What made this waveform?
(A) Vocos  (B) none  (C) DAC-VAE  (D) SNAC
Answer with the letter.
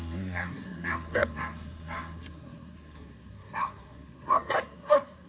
D